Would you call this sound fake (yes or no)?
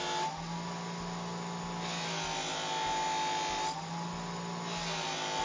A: no